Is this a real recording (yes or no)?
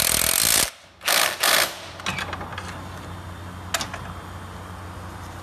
yes